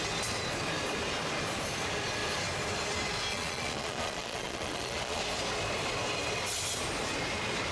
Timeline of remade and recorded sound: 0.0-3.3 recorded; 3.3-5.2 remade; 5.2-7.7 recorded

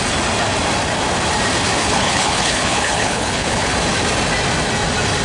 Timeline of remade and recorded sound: 0.0-1.8 recorded; 1.8-3.7 remade; 3.7-5.2 recorded

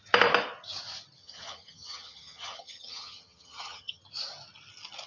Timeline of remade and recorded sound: 0.0-1.2 recorded; 1.2-4.0 remade; 4.0-5.1 recorded

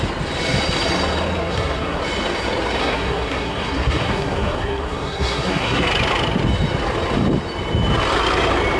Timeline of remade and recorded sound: 0.0-1.4 recorded; 1.4-2.0 remade; 2.0-2.8 recorded; 2.8-5.9 remade; 5.9-8.8 recorded

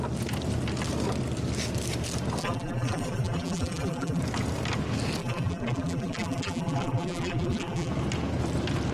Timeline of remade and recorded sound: 0.0-2.4 recorded; 2.4-4.2 remade; 4.2-5.2 recorded; 5.2-7.9 remade; 7.9-8.9 recorded

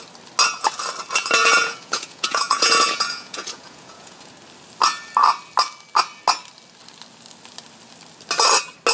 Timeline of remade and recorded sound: 0.0-1.4 recorded; 1.4-4.3 remade; 4.3-8.9 recorded

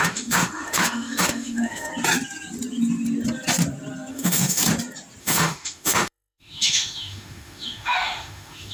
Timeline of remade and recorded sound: 0.0-1.9 remade; 1.9-4.1 recorded; 4.1-4.6 remade; 4.6-5.2 recorded; 5.2-8.7 remade